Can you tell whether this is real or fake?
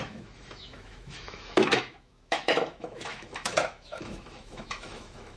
fake